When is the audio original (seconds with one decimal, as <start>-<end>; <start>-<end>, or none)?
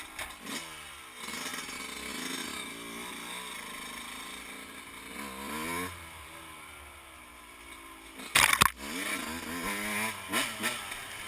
0.0-11.3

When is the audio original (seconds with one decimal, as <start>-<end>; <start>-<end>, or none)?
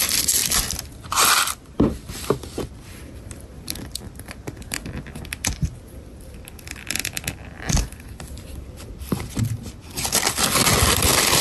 0.0-11.4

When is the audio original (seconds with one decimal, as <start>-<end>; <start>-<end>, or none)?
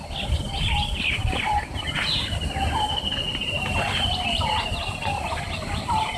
0.0-6.2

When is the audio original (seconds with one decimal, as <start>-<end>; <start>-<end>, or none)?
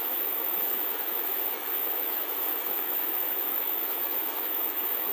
none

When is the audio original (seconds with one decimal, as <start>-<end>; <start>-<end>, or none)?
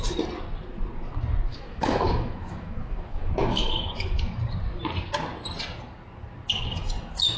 0.0-1.5; 4.1-7.4